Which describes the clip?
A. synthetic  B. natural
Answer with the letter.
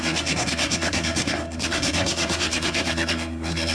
A